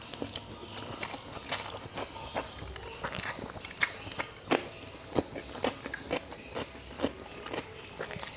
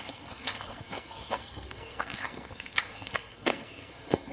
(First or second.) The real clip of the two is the first